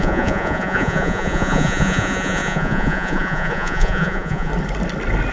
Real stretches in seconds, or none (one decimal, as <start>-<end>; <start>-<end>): 4.5-5.3